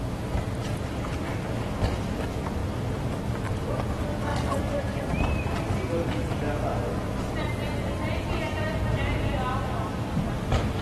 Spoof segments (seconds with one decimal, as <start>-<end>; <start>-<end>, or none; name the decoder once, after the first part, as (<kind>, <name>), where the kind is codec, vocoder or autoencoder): 4.3-5.6 (vocoder, BigVGAN v2)